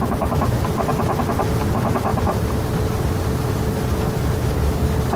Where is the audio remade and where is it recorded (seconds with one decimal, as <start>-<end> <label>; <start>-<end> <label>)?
0.0-5.2 recorded